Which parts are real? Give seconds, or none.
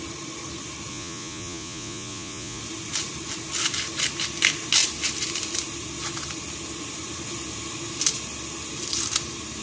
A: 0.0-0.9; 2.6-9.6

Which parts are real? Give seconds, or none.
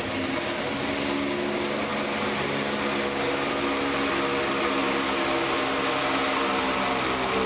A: 0.0-7.5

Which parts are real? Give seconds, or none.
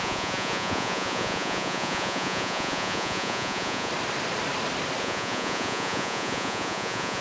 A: 3.9-5.0